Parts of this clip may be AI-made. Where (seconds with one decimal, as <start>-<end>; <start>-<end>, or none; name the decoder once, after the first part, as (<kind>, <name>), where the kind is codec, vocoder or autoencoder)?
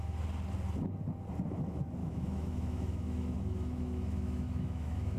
2.0-5.2 (autoencoder, DAC-VAE)